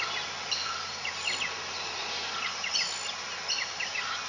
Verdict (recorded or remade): recorded